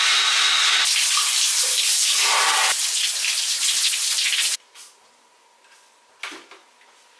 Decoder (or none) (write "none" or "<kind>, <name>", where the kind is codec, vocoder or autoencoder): none